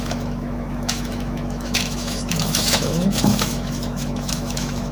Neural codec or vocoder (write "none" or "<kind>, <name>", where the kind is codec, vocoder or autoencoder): autoencoder, DAC-VAE